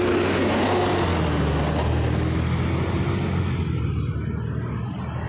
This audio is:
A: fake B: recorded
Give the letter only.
B